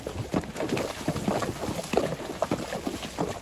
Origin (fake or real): real